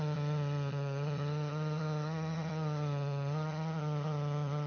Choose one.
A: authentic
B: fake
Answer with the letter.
B